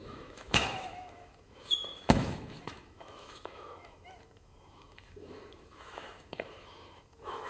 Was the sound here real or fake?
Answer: fake